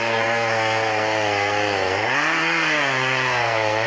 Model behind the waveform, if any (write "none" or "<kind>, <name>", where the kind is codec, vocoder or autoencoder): codec, SNAC